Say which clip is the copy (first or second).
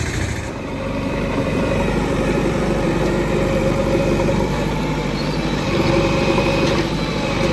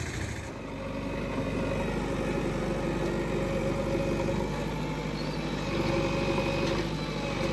first